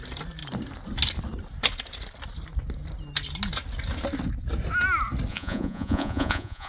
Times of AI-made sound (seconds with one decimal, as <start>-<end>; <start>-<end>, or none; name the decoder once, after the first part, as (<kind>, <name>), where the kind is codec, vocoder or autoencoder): 5.3-6.7 (vocoder, Vocos)